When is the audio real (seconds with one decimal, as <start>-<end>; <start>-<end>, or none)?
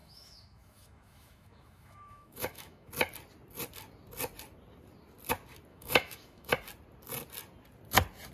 2.9-5.7; 6.5-8.3